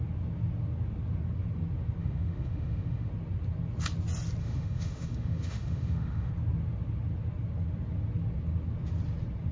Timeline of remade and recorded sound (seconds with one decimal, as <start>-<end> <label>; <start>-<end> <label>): 0.0-2.0 recorded; 2.0-3.1 remade; 3.1-4.4 recorded; 4.4-6.3 remade; 6.3-9.5 recorded